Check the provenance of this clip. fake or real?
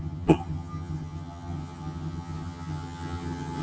fake